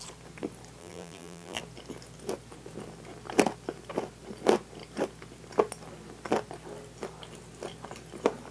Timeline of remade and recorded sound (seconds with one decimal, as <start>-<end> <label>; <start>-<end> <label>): 0.0-0.8 recorded; 0.8-1.6 remade; 1.6-8.5 recorded